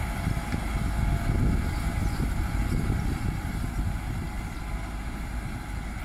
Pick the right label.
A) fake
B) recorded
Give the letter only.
B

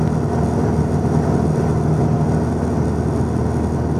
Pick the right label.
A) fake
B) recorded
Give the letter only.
B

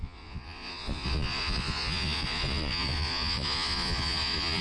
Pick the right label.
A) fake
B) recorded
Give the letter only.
A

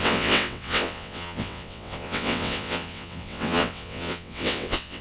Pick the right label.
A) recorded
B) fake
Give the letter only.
B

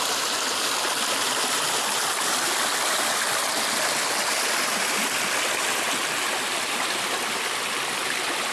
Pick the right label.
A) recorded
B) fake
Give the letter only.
A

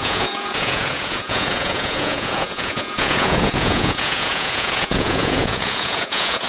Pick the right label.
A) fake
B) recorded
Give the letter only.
A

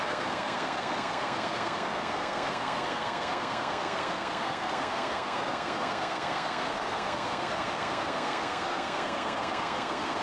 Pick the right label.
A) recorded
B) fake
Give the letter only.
B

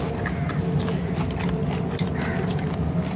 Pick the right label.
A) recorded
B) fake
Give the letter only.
A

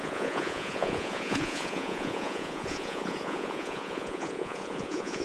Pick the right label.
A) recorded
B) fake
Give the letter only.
B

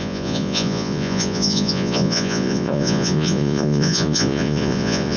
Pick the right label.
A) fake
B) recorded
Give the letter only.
A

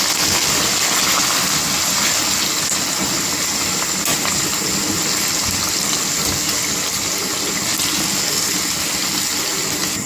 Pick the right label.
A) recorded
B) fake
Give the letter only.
A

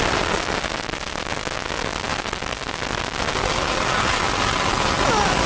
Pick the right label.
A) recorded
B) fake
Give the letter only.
A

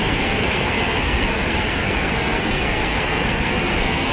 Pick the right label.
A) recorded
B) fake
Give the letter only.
B